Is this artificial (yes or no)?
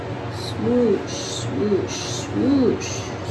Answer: no